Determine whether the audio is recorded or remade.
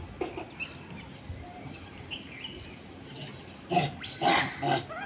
recorded